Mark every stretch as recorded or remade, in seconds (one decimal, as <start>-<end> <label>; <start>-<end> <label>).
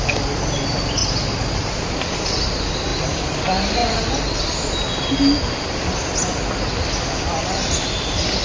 0.0-1.0 recorded; 1.0-2.0 remade; 2.0-2.9 recorded; 2.9-3.4 remade; 3.4-8.4 recorded